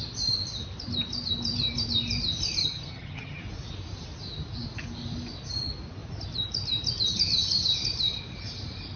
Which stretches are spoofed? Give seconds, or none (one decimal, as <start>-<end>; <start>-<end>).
2.6-3.4

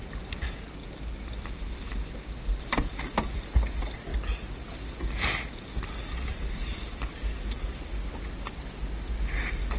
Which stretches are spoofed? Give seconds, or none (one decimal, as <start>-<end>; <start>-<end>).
none

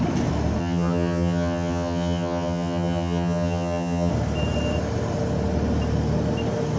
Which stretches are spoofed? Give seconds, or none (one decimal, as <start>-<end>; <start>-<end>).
0.6-4.1

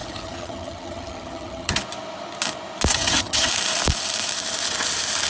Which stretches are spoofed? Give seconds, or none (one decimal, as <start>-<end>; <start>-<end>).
0.0-1.8; 2.9-3.5

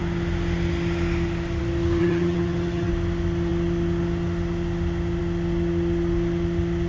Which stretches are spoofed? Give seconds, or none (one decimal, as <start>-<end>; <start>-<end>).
2.0-2.9

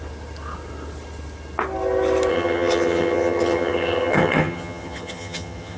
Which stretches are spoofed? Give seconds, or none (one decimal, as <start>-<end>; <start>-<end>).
2.3-5.8

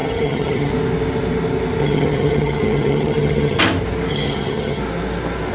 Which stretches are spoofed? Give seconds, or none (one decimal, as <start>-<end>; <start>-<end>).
0.0-0.7; 1.8-3.6; 4.1-4.8

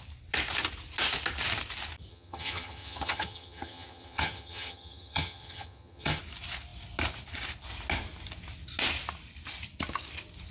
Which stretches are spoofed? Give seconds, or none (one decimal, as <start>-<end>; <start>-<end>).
2.1-6.2